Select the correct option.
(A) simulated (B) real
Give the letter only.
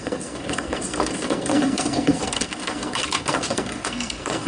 A